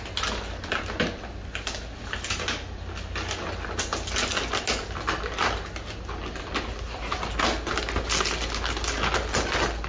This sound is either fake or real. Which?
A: real